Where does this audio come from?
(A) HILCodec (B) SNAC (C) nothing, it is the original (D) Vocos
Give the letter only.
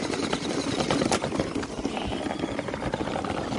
C